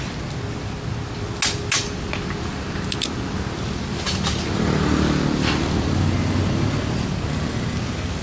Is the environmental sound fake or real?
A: real